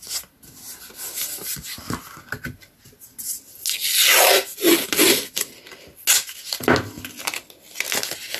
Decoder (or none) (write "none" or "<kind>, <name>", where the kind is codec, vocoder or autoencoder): none